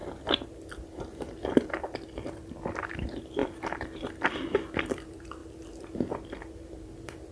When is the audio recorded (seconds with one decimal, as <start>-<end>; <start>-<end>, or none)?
0.0-1.4; 5.4-6.1